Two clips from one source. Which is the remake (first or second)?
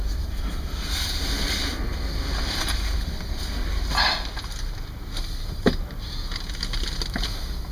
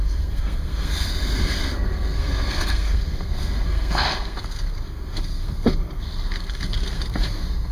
second